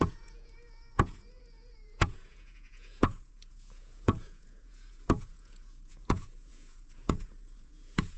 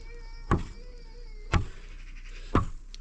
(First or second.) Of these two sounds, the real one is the second